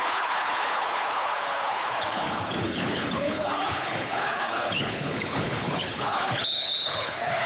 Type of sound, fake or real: fake